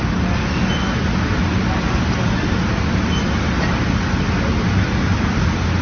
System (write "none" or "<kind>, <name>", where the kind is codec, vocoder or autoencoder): none